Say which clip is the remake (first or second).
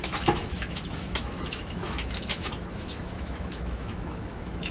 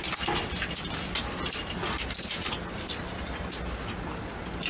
first